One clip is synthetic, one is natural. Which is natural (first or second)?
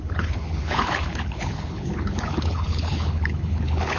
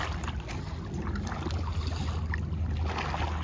second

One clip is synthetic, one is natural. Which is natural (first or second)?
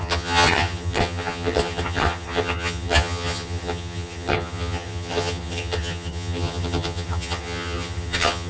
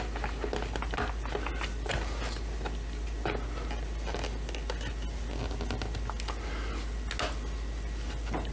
second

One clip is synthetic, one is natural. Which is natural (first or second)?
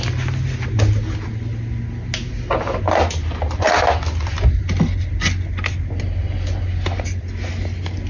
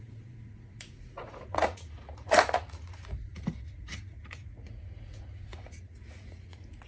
first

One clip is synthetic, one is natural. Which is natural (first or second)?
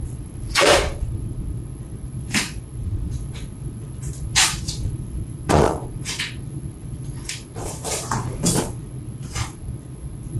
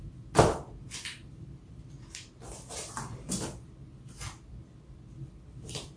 second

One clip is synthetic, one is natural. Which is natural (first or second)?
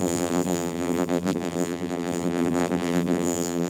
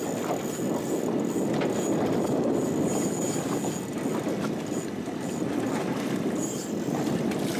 second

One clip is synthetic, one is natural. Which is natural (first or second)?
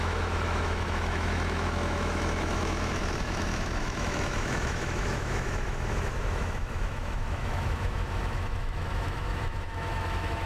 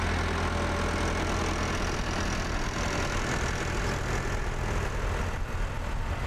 second